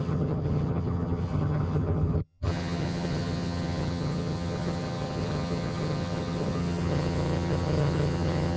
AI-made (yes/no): yes